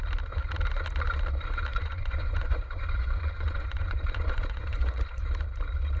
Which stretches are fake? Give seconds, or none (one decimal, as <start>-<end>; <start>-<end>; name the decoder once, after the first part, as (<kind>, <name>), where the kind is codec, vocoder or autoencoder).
1.7-5.2 (vocoder, Vocos)